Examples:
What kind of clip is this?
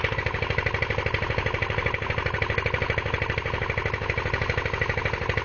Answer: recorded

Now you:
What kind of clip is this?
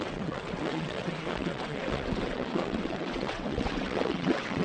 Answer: remade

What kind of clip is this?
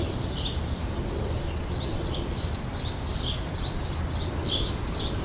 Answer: recorded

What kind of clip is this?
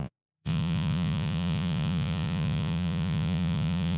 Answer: remade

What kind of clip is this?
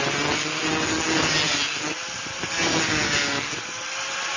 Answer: recorded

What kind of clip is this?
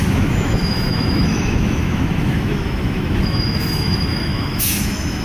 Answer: remade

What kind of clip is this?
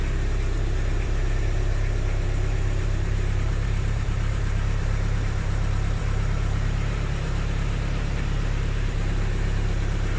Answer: remade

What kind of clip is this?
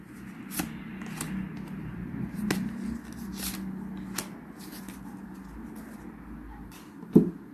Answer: recorded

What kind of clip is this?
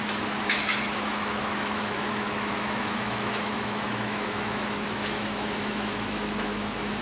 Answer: remade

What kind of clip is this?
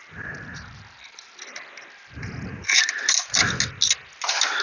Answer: recorded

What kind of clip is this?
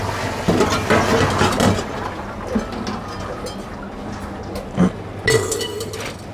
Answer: recorded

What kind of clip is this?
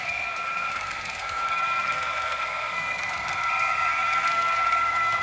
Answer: remade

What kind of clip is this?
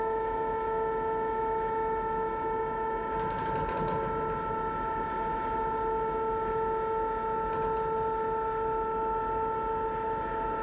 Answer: recorded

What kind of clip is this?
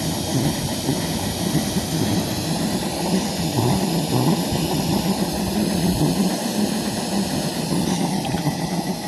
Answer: recorded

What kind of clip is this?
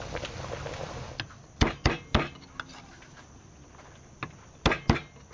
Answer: recorded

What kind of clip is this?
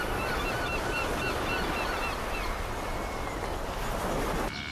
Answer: recorded